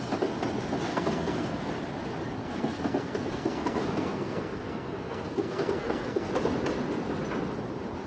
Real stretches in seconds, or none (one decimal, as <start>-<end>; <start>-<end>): 0.0-0.9; 1.7-2.4; 6.3-8.1